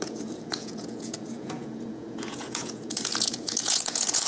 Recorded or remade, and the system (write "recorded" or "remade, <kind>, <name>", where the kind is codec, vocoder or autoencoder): remade, vocoder, Vocos